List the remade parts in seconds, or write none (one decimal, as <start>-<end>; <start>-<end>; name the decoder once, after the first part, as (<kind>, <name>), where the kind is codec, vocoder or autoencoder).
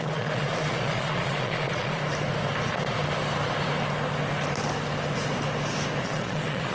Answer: 0.0-2.0 (vocoder, Vocos); 6.0-6.7